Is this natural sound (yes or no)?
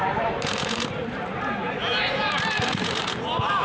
no